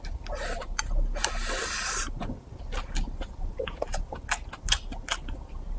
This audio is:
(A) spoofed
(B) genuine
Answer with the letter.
B